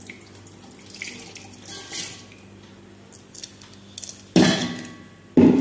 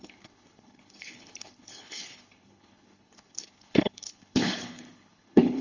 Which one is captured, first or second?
first